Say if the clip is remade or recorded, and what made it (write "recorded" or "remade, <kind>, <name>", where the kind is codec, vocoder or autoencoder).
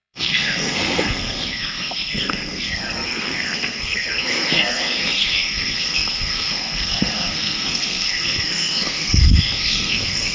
remade, codec, SNAC